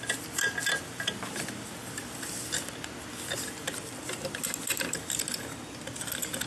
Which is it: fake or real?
real